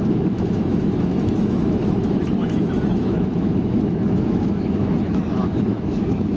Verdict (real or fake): fake